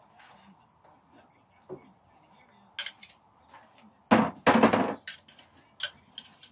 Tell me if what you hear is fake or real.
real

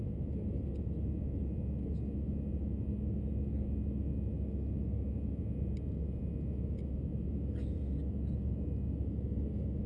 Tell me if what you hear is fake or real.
real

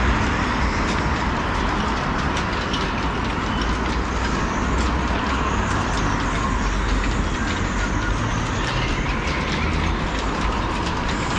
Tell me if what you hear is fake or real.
real